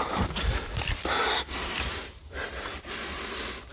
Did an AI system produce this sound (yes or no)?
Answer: yes